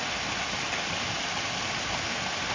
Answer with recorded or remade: recorded